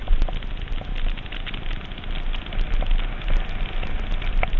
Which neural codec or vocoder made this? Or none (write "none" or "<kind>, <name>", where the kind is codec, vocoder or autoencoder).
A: none